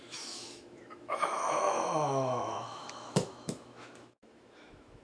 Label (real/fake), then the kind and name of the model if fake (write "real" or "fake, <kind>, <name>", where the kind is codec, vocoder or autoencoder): fake, autoencoder, DAC-VAE